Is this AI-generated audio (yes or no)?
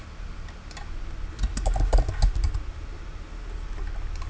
no